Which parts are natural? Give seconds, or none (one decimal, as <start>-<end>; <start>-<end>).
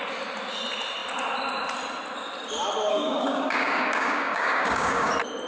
0.0-2.9; 5.1-5.5